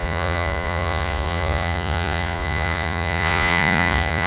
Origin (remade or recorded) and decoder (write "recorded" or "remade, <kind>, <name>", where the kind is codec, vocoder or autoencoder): remade, vocoder, Vocos